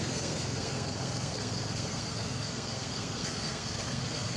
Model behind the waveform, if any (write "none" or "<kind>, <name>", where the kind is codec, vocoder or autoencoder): codec, SNAC